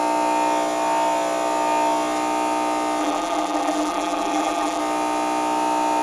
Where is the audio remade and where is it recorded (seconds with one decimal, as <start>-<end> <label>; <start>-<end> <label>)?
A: 0.0-3.0 recorded; 3.0-4.8 remade; 4.8-6.0 recorded